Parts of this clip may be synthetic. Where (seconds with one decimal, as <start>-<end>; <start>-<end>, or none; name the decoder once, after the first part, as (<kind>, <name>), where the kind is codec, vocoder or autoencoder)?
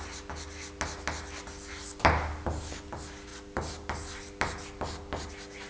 none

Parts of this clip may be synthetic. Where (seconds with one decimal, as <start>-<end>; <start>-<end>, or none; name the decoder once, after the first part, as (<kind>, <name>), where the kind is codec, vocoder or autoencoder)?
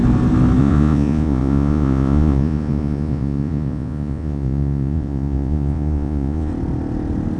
0.6-6.5 (vocoder, Vocos)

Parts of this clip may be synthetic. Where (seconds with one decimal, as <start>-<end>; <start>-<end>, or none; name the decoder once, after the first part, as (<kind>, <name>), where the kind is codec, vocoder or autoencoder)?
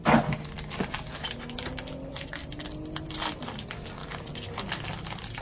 none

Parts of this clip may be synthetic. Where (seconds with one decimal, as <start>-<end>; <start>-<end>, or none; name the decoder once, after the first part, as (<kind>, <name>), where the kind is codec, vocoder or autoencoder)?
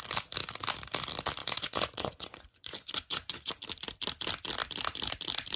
1.4-3.5 (vocoder, Vocos)